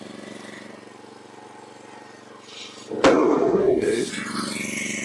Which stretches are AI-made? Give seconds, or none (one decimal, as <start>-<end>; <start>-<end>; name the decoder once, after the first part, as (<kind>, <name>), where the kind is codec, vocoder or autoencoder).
3.1-4.1 (codec, SNAC)